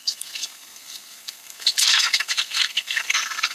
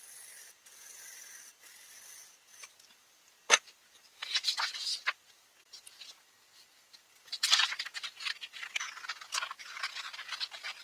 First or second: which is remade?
first